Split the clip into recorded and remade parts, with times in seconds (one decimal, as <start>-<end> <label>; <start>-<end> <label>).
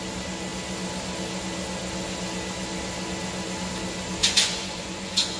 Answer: 0.0-4.2 recorded; 4.2-5.4 remade